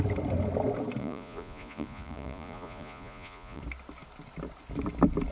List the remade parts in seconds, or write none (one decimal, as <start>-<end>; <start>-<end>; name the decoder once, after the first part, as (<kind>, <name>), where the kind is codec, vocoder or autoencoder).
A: 1.0-3.6 (vocoder, Vocos)